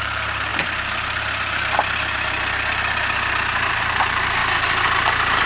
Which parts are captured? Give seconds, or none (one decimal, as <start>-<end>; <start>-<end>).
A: 0.5-3.8; 4.4-5.5